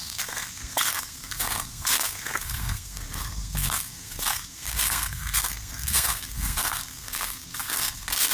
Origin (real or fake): fake